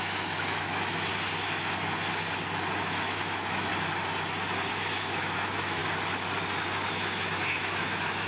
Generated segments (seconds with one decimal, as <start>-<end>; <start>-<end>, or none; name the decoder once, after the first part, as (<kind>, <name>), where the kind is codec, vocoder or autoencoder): 0.0-1.1 (autoencoder, DAC-VAE); 2.9-3.7; 4.7-5.8; 6.9-8.3